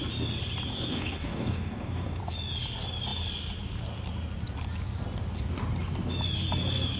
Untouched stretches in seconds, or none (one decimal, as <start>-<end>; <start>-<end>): 0.0-0.7; 2.2-7.0

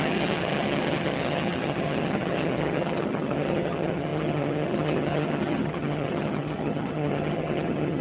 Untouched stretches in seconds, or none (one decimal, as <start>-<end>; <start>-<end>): none

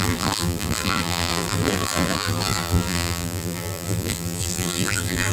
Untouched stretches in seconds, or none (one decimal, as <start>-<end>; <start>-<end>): none

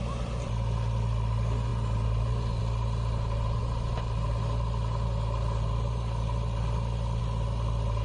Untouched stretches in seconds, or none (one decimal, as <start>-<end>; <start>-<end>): 0.0-8.0

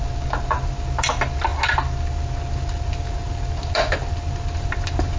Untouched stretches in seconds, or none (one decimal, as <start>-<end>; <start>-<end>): 0.0-5.2

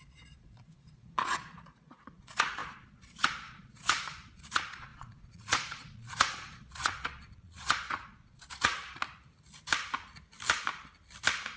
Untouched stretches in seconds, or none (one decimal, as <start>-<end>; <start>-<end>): 9.0-11.6

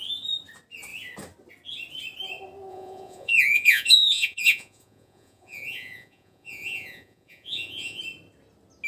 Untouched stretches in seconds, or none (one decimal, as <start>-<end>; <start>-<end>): 0.0-2.7; 8.0-8.9

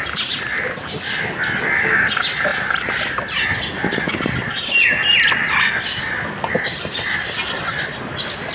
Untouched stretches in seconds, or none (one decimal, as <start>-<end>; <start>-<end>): 0.0-8.5